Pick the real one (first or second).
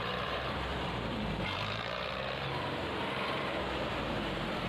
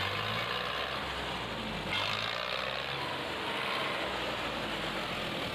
second